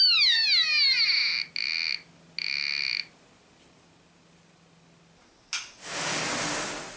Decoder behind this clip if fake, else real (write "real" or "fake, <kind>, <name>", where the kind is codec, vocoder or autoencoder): real